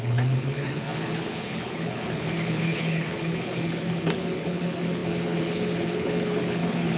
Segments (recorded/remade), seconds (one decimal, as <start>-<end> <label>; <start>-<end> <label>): 0.0-7.0 remade